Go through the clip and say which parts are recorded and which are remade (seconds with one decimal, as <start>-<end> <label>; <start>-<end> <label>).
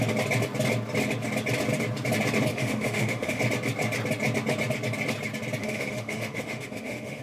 0.0-2.5 recorded; 2.5-3.4 remade; 3.4-5.6 recorded; 5.6-7.2 remade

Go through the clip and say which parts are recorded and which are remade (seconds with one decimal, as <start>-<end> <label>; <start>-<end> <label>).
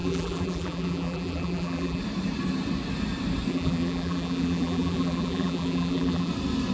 0.0-2.0 remade; 2.0-3.5 recorded; 3.5-6.3 remade; 6.3-6.7 recorded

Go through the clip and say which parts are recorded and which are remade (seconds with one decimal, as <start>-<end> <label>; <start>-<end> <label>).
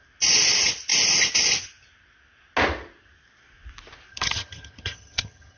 0.0-4.1 recorded; 4.1-5.6 remade